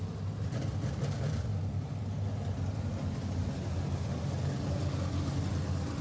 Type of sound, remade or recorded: recorded